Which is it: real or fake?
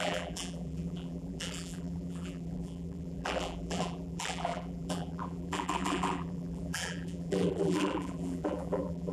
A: fake